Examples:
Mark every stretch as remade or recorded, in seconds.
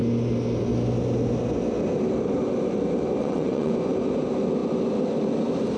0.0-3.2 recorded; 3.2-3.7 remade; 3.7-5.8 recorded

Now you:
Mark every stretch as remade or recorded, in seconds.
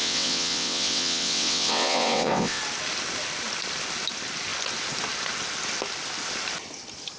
0.0-2.6 remade; 2.6-7.2 recorded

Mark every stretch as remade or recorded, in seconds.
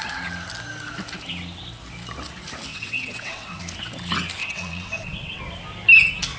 0.0-2.7 recorded; 2.7-3.6 remade; 3.6-4.4 recorded; 4.4-5.4 remade; 5.4-6.4 recorded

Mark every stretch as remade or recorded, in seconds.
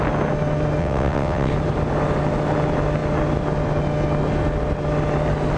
0.0-0.8 recorded; 0.8-1.5 remade; 1.5-5.6 recorded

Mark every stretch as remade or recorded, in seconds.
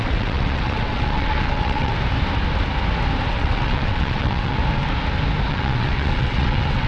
0.0-1.9 remade; 1.9-3.3 recorded; 3.3-4.6 remade; 4.6-5.5 recorded; 5.5-6.9 remade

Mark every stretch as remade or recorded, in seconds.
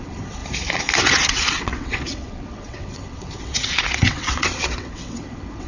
0.0-0.4 remade; 0.4-1.0 recorded; 1.0-5.7 remade